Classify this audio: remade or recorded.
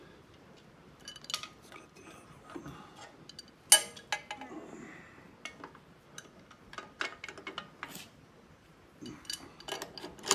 recorded